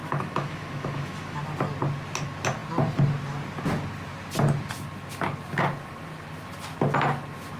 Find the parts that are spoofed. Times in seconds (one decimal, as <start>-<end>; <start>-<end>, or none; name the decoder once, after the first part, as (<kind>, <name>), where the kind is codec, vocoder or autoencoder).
0.0-1.4 (autoencoder, DAC-VAE)